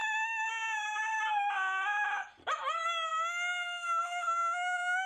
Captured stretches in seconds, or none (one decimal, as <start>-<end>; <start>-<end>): 0.5-3.1